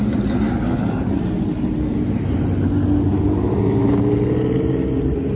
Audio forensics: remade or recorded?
recorded